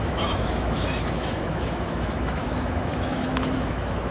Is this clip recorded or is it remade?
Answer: remade